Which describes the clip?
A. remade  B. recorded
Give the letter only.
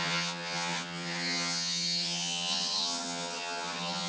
A